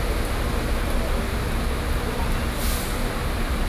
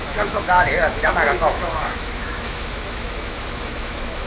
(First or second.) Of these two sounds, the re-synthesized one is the second